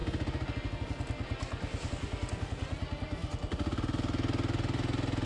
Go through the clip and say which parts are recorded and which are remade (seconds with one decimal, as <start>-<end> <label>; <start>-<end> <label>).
0.0-1.9 recorded; 1.9-3.2 remade; 3.2-5.3 recorded